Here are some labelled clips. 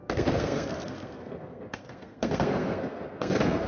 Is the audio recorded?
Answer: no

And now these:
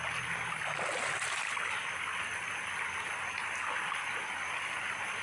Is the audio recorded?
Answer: yes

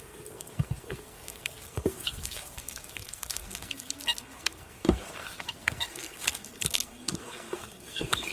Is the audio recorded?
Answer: no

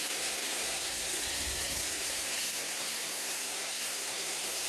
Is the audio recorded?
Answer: no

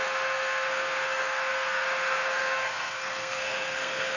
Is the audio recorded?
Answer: no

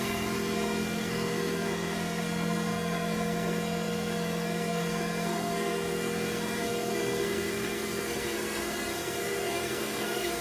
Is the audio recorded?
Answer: no